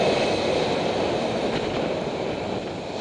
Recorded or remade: recorded